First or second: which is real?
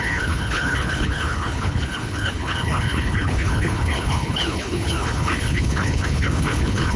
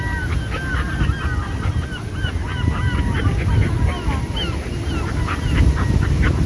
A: second